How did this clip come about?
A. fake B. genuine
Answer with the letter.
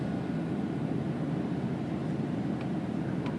B